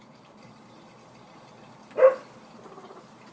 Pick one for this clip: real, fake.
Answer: real